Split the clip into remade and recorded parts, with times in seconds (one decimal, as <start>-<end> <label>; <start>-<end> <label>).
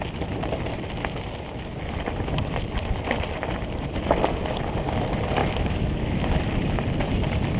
0.0-5.4 recorded; 5.4-6.4 remade; 6.4-7.6 recorded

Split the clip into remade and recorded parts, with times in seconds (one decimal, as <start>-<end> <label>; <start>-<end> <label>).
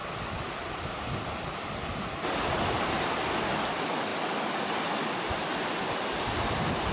0.0-6.9 recorded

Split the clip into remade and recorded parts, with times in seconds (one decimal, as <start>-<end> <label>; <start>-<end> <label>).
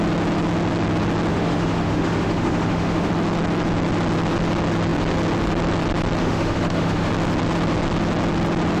0.0-1.3 recorded; 1.3-3.1 remade; 3.1-6.2 recorded; 6.2-7.1 remade; 7.1-8.8 recorded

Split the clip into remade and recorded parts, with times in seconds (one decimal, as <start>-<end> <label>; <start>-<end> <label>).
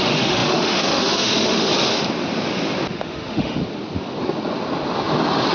0.0-1.7 remade; 1.7-2.9 recorded; 2.9-3.6 remade; 3.6-5.5 recorded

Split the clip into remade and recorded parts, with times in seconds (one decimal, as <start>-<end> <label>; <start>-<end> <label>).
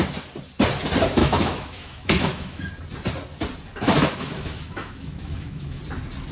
0.0-1.2 recorded; 1.2-2.7 remade; 2.7-4.0 recorded; 4.0-5.8 remade; 5.8-6.3 recorded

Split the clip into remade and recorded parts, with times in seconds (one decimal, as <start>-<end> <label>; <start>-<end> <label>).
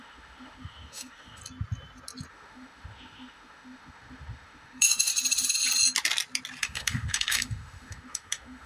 0.0-1.4 remade; 1.4-2.3 recorded; 2.3-5.1 remade; 5.1-6.6 recorded; 6.6-8.7 remade